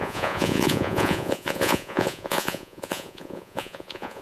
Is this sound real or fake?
fake